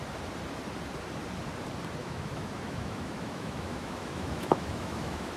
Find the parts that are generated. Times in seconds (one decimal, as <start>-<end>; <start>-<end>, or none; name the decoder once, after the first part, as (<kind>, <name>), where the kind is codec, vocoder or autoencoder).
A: 2.0-5.4 (autoencoder, DAC-VAE)